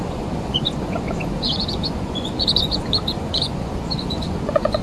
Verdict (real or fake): fake